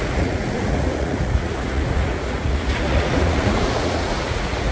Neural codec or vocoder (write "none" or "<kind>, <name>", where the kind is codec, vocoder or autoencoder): vocoder, Vocos